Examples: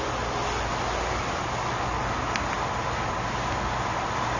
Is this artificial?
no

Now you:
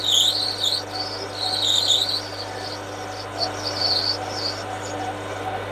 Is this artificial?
no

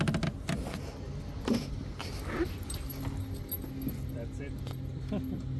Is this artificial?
no